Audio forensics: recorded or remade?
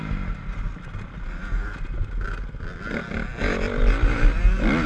recorded